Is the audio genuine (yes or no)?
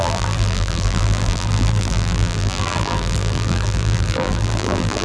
no